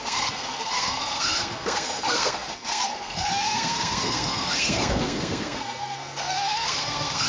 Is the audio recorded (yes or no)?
no